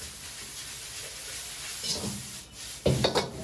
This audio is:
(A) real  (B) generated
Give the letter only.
A